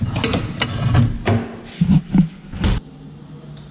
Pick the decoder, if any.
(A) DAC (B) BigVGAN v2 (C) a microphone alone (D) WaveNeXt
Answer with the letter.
C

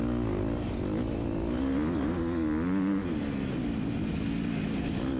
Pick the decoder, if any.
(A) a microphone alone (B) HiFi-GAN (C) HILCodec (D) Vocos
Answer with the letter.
A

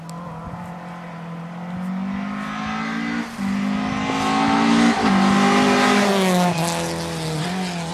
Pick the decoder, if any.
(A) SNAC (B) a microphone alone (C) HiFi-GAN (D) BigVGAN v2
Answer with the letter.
B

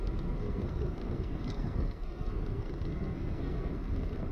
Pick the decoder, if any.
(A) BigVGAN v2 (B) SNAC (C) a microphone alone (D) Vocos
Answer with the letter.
B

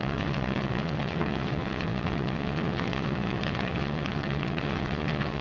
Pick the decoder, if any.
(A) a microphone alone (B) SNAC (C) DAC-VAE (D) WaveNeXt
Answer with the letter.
D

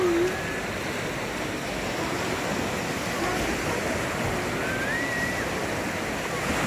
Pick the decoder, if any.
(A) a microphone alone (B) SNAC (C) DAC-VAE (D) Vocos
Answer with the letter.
A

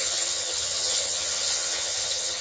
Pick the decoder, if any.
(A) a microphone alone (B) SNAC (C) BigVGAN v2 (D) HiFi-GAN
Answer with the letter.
D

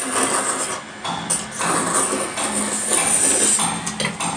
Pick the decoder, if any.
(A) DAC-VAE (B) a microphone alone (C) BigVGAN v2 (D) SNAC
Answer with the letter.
B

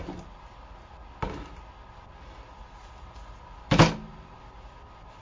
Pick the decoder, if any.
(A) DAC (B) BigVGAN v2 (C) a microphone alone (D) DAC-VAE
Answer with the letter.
C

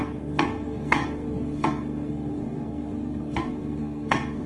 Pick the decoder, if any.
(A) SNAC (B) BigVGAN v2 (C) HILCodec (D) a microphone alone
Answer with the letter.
A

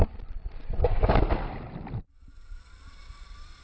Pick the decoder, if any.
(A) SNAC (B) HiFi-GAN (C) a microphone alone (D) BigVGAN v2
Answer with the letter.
D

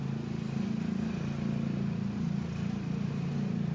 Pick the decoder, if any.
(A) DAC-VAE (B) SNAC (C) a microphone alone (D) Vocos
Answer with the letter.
C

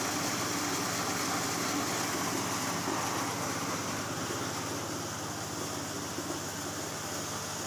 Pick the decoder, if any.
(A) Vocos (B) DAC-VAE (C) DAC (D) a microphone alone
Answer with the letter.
D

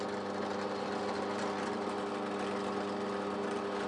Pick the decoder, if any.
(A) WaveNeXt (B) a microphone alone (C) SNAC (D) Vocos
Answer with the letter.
B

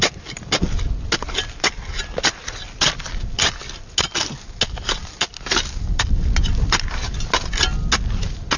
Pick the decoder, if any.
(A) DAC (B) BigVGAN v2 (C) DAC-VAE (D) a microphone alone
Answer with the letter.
D